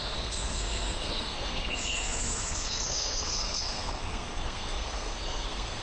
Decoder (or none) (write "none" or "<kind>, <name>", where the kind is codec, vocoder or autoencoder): codec, SNAC